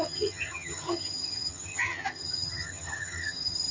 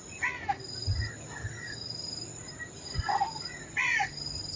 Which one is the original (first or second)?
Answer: second